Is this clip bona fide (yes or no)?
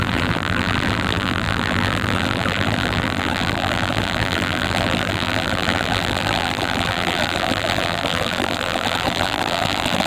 no